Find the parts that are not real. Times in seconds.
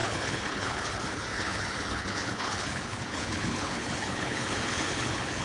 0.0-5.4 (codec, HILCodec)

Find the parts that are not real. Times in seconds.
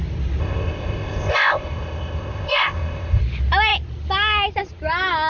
0.4-3.2 (codec, ZipCodec)